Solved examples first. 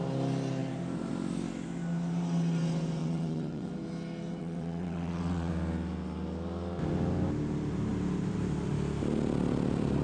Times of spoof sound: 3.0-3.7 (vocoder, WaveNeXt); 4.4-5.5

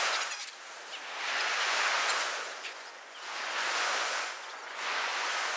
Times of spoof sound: 0.0-0.4 (vocoder, Vocos); 1.3-5.6

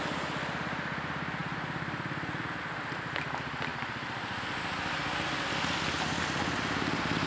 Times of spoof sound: none

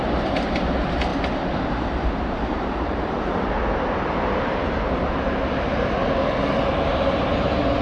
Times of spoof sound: 0.0-6.0 (vocoder, BigVGAN v2); 6.7-7.8

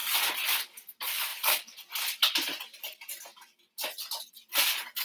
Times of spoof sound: none

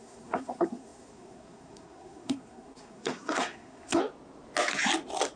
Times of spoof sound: 0.0-4.0 (codec, SNAC)

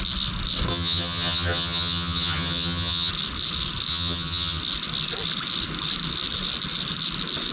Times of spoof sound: 0.7-3.1 (vocoder, HiFi-GAN); 3.9-4.6

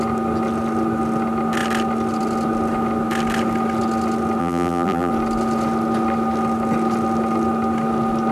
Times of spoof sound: 4.4-5.1 (vocoder, BigVGAN v2)